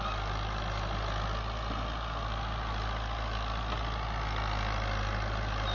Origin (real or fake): real